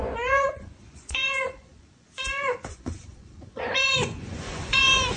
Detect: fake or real fake